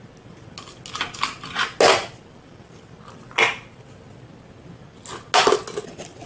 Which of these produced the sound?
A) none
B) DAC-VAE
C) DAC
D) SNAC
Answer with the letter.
A